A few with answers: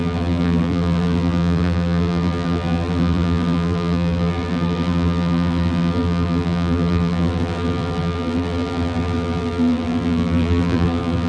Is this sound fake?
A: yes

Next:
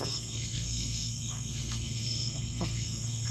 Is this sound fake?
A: yes